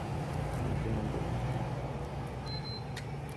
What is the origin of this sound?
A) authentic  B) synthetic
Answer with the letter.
A